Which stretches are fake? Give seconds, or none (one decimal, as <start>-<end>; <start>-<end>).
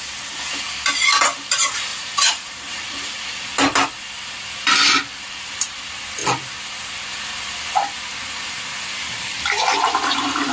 1.9-2.5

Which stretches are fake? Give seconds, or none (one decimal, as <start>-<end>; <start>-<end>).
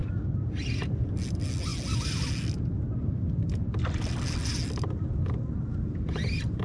none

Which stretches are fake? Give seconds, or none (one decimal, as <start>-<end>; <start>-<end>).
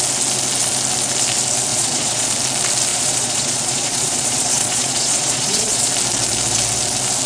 1.7-2.3; 2.9-5.9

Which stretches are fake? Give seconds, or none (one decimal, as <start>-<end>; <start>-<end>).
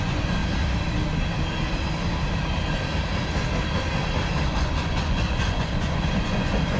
0.0-0.4; 4.5-6.8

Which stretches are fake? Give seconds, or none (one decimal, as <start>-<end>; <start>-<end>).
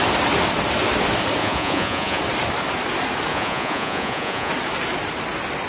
1.4-2.2; 3.3-4.5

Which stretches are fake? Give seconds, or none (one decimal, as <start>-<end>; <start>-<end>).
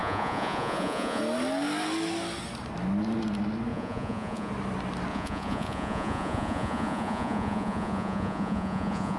0.0-1.2; 3.7-4.5; 5.1-9.2